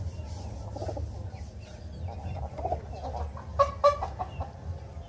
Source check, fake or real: real